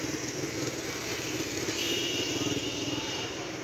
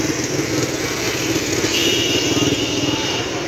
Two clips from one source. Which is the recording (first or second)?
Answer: second